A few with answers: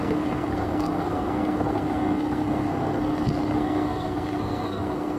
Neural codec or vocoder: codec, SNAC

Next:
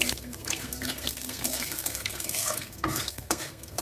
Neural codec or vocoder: codec, SNAC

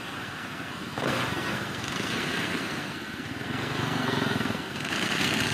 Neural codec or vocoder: codec, SNAC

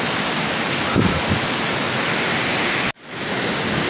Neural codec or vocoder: none